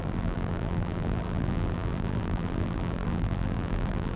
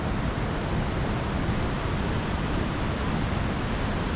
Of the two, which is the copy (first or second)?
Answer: first